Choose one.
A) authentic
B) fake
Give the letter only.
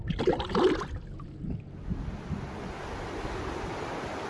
A